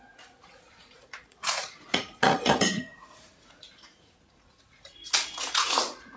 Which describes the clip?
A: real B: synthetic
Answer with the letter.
B